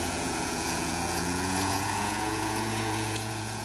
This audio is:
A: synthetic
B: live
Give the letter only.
A